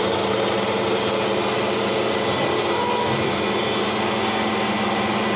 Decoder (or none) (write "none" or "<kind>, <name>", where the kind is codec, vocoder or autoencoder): none